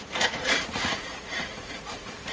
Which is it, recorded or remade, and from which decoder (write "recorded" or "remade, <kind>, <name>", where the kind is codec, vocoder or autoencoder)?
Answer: remade, vocoder, Vocos